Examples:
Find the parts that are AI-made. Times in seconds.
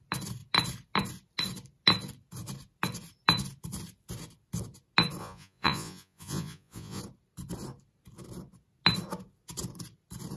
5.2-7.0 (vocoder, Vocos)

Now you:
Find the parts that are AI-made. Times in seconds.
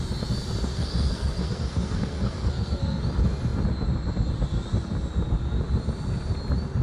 0.7-3.0 (codec, SNAC)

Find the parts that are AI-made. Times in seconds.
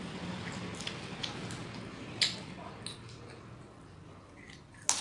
none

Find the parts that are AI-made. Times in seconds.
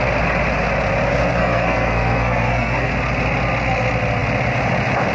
1.4-2.9 (codec, SNAC)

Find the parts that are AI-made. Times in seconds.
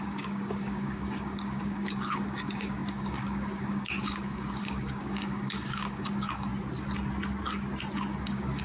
0.0-6.5 (codec, DAC); 8.2-8.6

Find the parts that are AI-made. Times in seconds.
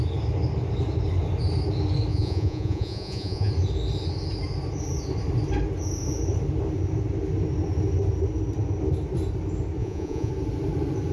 2.1-3.5 (vocoder, Vocos); 9.8-10.3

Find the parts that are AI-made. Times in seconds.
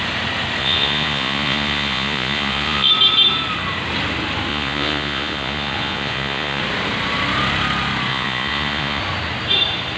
0.6-2.9 (vocoder, Vocos); 4.5-6.6; 8.1-9.0